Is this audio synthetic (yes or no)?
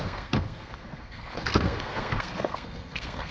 yes